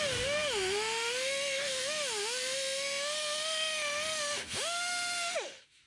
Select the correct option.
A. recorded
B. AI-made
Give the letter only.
B